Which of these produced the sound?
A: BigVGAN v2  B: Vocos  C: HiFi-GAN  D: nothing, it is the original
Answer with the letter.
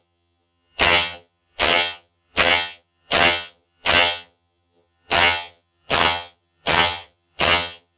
C